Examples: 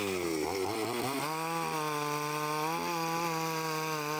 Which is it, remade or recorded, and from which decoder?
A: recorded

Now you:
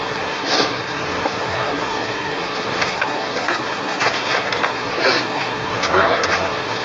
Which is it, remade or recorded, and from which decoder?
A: remade, codec, SNAC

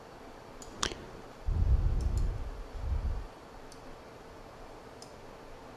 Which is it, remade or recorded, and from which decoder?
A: recorded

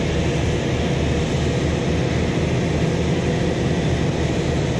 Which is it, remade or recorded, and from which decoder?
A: recorded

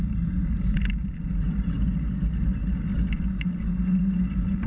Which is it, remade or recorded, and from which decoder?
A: remade, vocoder, BigVGAN v2